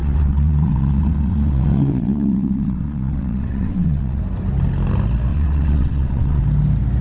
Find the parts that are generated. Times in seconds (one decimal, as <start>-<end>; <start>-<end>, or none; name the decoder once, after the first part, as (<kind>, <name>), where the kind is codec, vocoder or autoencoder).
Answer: 0.0-4.2 (vocoder, WaveNeXt); 5.3-6.4